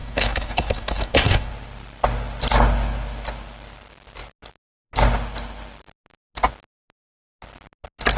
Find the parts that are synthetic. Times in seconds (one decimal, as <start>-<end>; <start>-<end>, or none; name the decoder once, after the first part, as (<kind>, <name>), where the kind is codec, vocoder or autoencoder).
0.0-1.5 (autoencoder, DAC-VAE)